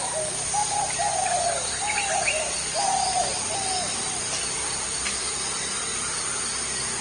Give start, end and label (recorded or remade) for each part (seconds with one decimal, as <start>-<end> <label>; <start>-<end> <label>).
0.0-7.0 recorded